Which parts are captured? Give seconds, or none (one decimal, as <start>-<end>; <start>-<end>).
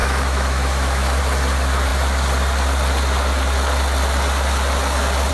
1.2-5.3